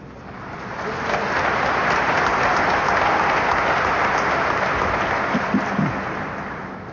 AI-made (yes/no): no